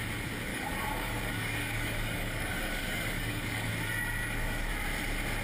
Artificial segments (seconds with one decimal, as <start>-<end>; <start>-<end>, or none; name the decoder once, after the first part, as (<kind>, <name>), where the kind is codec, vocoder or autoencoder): 0.5-3.7 (codec, DAC); 4.2-4.7